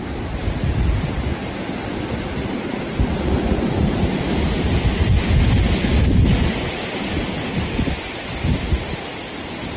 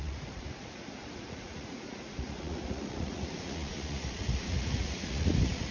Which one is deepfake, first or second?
second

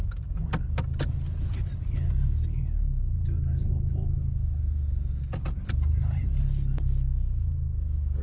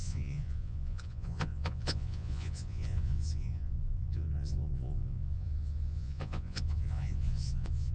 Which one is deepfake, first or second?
second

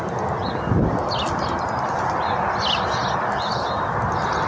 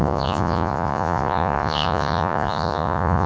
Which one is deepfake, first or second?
second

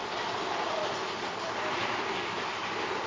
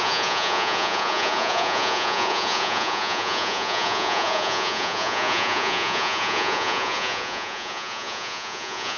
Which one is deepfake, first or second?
second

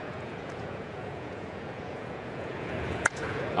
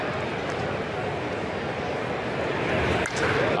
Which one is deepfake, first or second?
first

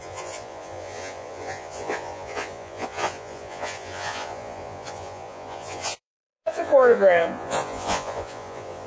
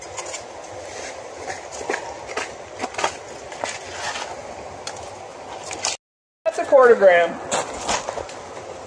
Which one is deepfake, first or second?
first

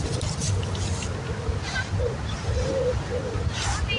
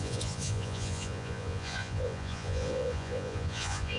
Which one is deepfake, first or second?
second